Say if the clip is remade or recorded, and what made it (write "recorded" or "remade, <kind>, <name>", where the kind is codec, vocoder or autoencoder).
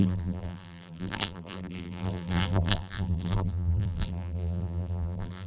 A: remade, vocoder, BigVGAN v2